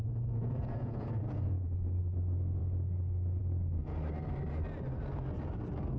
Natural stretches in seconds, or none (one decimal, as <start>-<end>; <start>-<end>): 2.0-6.0